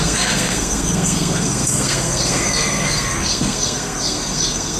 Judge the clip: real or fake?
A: fake